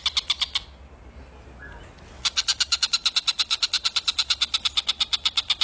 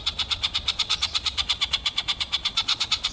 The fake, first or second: second